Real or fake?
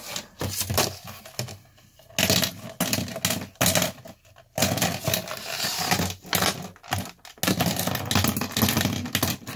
real